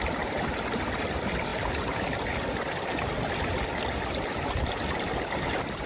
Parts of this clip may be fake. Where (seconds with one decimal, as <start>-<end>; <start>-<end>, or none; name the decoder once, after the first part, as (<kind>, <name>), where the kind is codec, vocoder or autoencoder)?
none